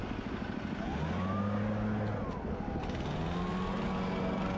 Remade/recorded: recorded